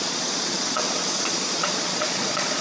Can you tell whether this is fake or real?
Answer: fake